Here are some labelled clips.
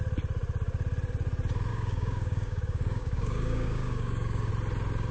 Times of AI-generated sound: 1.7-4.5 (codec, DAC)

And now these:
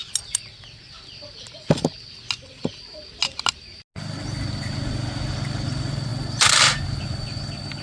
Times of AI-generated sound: none

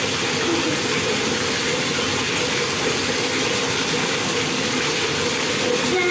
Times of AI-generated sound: 4.0-4.8 (codec, DAC)

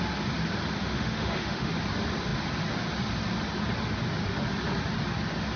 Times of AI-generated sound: 0.8-1.7 (autoencoder, DAC-VAE)

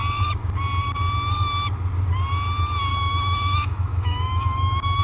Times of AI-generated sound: 2.9-5.0 (autoencoder, DAC-VAE)

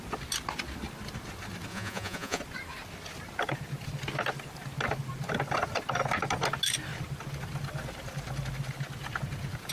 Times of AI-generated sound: 1.7-2.4 (vocoder, Vocos)

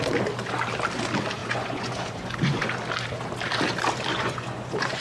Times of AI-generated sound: 1.4-2.7 (vocoder, Vocos); 4.1-5.0

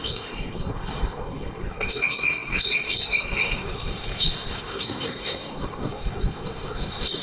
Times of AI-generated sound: 0.0-7.2 (codec, SNAC)